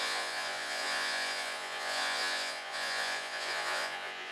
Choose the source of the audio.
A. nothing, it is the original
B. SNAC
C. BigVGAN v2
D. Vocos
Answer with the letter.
D